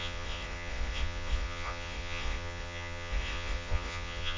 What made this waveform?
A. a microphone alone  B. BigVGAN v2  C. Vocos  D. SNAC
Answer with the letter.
C